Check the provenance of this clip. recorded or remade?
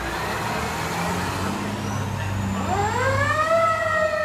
recorded